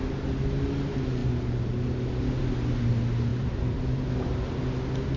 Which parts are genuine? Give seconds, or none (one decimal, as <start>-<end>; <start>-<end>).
0.0-3.3; 4.1-5.2